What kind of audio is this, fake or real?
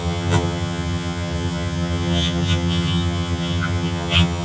fake